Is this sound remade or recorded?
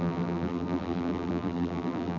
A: remade